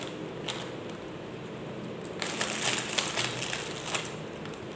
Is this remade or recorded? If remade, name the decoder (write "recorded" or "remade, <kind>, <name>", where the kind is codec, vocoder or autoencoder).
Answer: recorded